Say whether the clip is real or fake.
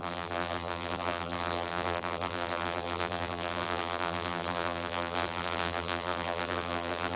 fake